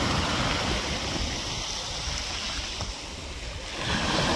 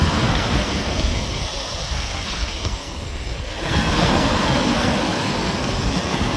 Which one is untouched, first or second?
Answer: first